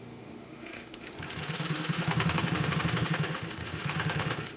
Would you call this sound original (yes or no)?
no